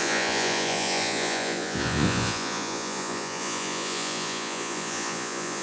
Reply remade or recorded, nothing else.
remade